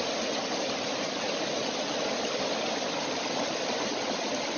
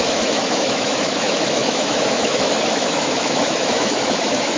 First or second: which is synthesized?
second